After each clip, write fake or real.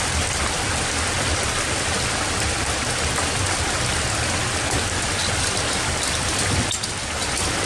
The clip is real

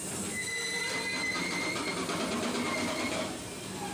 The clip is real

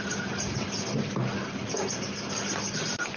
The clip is real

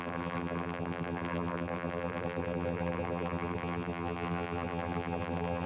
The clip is fake